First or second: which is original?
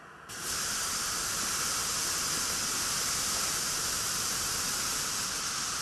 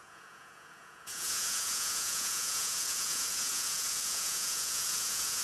first